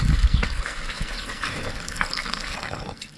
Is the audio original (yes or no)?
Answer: no